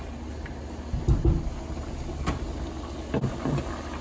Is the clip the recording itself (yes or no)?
yes